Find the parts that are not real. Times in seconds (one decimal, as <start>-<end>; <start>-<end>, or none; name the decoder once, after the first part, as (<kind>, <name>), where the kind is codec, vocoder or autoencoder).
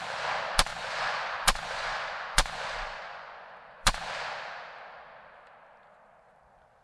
0.7-4.1 (vocoder, Vocos)